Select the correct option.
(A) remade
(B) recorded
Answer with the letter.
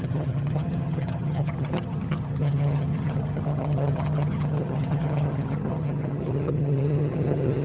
A